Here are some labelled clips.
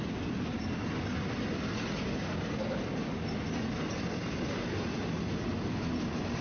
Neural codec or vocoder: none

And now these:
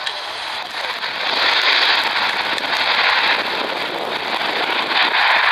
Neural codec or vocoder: none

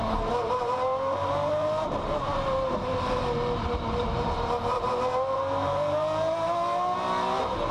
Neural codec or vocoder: vocoder, BigVGAN v2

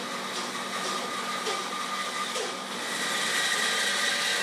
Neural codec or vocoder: none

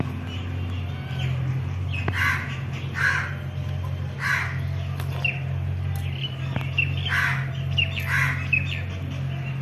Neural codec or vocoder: none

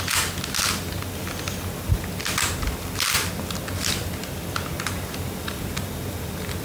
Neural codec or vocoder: none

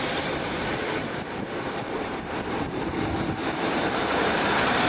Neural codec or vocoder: vocoder, BigVGAN v2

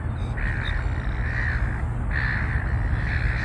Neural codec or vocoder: none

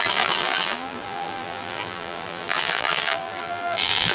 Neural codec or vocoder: vocoder, BigVGAN v2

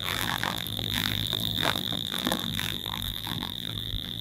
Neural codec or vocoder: vocoder, BigVGAN v2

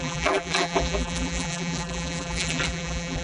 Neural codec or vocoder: vocoder, BigVGAN v2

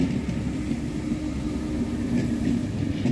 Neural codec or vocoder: none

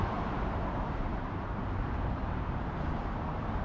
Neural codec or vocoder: vocoder, BigVGAN v2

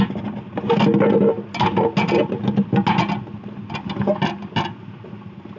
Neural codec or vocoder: none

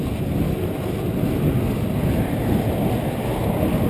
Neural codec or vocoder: none